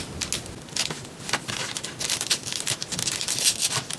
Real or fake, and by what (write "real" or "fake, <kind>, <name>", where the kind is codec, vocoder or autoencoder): real